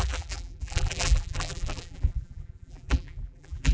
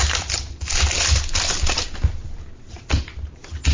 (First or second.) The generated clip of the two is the first